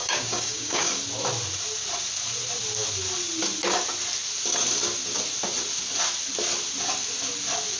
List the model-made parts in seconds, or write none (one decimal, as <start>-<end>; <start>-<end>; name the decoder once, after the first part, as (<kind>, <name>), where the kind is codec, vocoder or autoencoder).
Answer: 0.0-0.9 (codec, DAC)